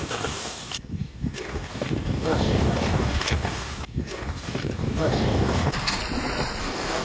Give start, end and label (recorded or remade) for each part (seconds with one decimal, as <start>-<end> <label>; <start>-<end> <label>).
0.0-6.0 remade; 6.0-6.6 recorded; 6.6-7.0 remade